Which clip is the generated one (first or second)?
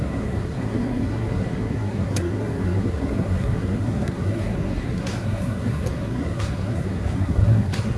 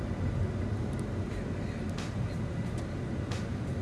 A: first